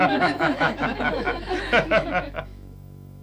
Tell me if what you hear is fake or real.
fake